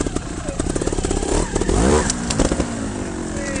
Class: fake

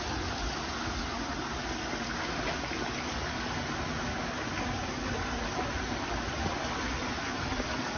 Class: real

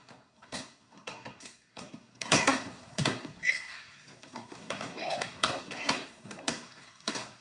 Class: fake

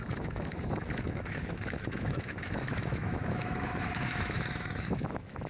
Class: fake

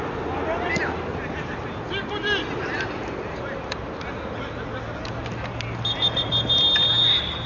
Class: real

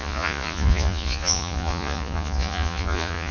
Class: fake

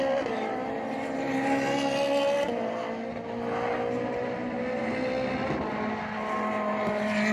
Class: real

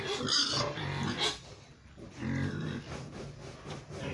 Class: real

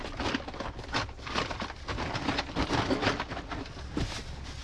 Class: real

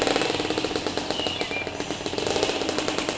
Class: real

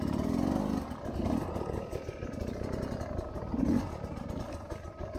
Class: real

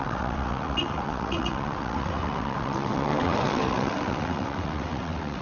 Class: fake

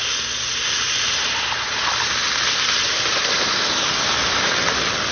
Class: real